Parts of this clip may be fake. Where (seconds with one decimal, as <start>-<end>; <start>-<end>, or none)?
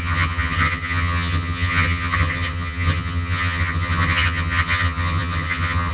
0.0-5.9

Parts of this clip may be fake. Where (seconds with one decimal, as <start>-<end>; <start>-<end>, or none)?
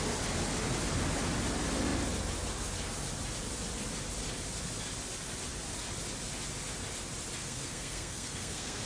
7.4-8.9